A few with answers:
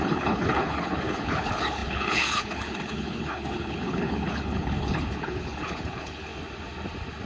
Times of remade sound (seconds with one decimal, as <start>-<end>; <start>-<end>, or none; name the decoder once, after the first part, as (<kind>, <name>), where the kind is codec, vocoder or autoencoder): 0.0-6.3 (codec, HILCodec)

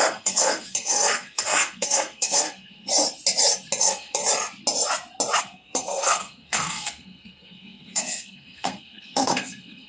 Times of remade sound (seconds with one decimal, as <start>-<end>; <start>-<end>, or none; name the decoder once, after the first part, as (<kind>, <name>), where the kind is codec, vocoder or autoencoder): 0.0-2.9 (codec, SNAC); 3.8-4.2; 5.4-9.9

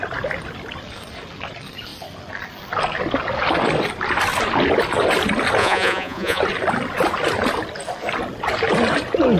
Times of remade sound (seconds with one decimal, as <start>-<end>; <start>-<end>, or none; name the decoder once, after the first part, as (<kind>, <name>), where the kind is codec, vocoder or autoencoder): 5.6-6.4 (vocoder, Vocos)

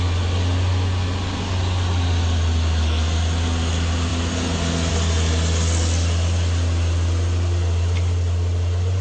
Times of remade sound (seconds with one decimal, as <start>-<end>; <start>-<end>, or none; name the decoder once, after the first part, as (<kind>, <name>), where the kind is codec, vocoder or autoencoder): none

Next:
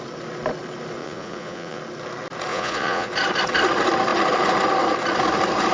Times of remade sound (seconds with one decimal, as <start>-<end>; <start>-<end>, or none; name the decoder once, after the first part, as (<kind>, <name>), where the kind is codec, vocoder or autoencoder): 1.0-1.8 (vocoder, Vocos); 2.5-3.1